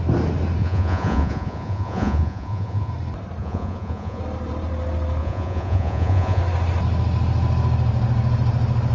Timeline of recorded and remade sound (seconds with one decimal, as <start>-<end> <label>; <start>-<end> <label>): 0.0-0.6 recorded; 0.6-2.9 remade; 2.9-3.4 recorded; 3.4-4.2 remade; 4.2-5.2 recorded; 5.2-6.4 remade; 6.4-8.9 recorded